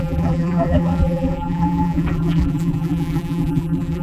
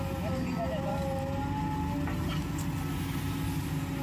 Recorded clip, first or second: second